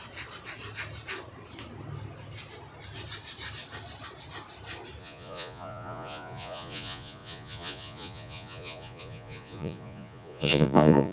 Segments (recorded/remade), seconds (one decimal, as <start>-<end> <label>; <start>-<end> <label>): 0.0-5.0 recorded; 5.0-11.1 remade